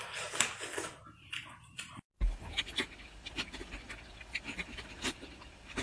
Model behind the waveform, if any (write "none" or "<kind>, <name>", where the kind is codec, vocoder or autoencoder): none